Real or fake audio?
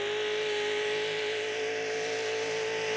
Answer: real